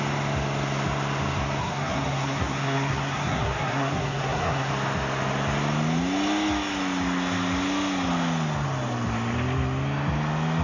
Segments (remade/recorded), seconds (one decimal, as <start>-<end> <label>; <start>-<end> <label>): 0.0-1.6 recorded; 1.6-4.7 remade; 4.7-10.6 recorded